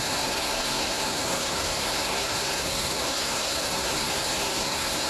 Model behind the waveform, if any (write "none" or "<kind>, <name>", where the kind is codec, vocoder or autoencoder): codec, SNAC